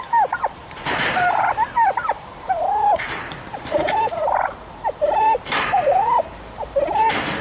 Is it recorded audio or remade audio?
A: remade